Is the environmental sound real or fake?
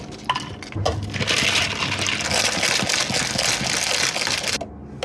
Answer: real